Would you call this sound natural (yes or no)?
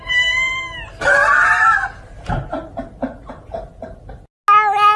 yes